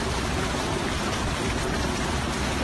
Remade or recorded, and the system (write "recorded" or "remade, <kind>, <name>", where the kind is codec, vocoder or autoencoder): remade, vocoder, BigVGAN v2